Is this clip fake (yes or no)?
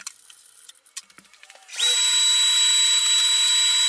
no